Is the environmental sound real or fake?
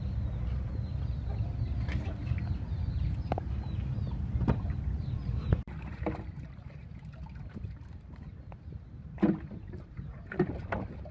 fake